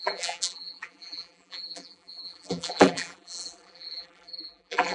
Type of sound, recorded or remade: remade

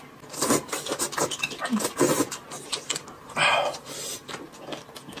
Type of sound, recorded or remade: recorded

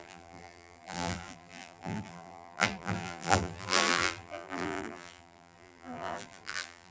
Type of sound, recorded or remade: remade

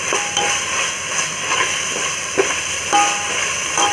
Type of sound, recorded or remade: recorded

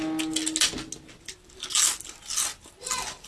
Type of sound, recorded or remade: recorded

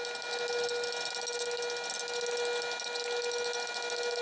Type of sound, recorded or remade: recorded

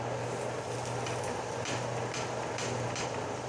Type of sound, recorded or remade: remade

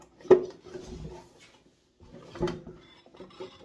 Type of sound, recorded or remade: recorded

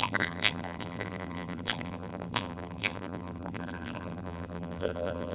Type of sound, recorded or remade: remade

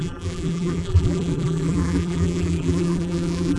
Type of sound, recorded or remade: remade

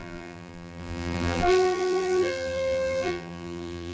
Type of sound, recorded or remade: remade